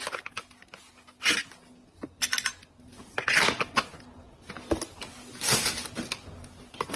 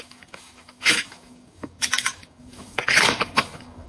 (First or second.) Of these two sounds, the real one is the first